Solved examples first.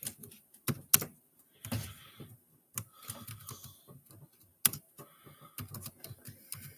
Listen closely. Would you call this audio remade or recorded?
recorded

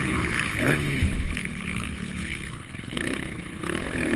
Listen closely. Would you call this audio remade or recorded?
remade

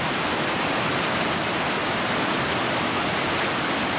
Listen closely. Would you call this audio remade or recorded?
recorded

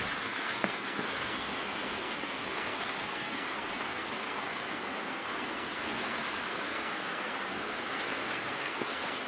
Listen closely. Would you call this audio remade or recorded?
remade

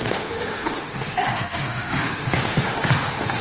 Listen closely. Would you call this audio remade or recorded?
remade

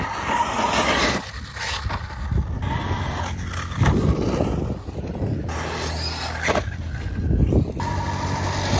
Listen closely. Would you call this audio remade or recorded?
recorded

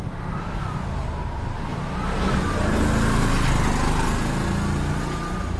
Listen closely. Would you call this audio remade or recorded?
recorded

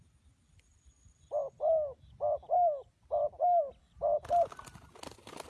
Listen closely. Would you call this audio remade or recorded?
recorded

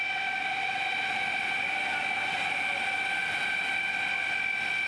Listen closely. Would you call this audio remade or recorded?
recorded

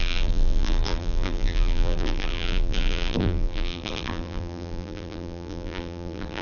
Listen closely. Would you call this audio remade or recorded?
remade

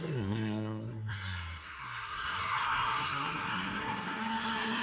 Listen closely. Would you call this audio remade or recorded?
remade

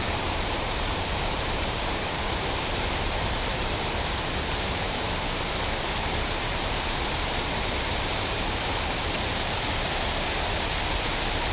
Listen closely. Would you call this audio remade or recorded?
remade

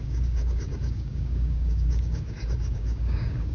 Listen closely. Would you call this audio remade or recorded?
remade